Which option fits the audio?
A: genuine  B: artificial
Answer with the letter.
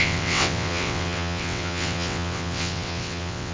B